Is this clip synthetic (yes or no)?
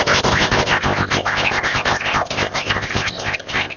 yes